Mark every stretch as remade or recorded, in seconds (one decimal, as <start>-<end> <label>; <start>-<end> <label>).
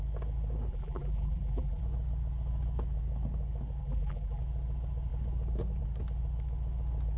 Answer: 0.0-0.7 recorded; 0.7-1.8 remade; 1.8-3.8 recorded; 3.8-4.4 remade; 4.4-7.2 recorded